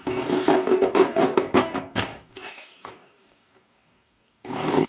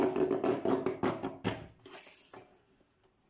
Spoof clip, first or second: first